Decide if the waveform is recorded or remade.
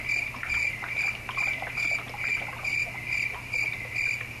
recorded